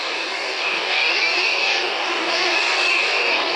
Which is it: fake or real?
fake